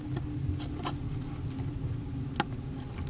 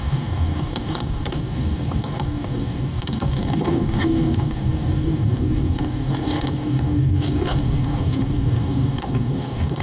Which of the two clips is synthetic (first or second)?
second